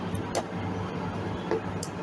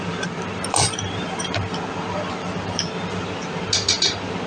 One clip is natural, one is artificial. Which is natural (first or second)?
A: first